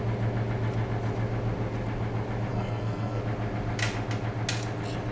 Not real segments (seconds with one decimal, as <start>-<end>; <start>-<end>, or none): 2.5-3.2